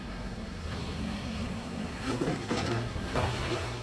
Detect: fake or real fake